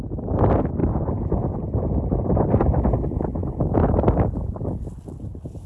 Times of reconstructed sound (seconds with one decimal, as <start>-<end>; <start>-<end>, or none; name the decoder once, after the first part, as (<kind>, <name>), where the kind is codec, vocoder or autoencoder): none